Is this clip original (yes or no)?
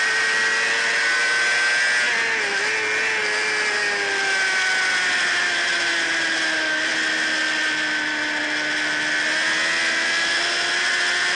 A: yes